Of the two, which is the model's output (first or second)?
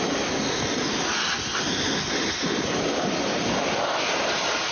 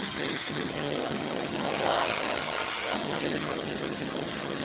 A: second